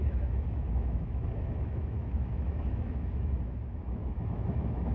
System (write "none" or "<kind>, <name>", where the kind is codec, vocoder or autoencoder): autoencoder, DAC-VAE